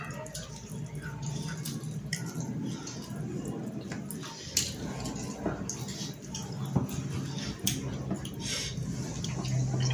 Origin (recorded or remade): recorded